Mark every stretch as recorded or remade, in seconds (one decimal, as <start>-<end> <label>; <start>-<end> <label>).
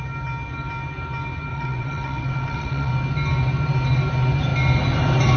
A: 0.0-1.5 recorded; 1.5-2.9 remade; 2.9-5.4 recorded